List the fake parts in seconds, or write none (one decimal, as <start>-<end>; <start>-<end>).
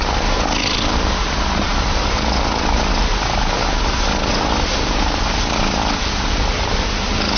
4.3-5.6